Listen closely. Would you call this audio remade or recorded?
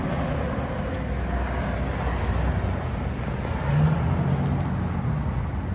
recorded